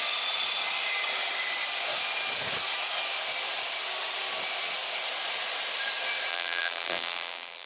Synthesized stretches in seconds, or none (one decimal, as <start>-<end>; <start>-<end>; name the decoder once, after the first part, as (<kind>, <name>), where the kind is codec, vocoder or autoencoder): 6.3-7.7 (vocoder, BigVGAN v2)